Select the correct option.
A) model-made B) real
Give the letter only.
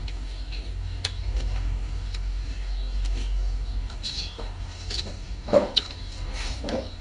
A